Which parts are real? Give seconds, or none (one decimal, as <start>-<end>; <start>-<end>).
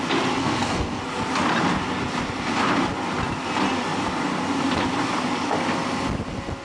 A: 0.0-0.4; 1.0-6.6